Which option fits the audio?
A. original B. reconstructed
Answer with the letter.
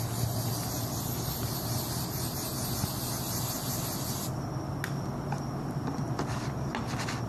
A